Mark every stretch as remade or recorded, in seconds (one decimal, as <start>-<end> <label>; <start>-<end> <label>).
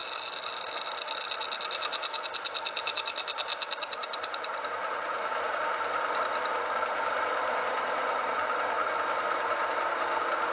0.0-3.5 recorded; 3.5-5.4 remade; 5.4-10.5 recorded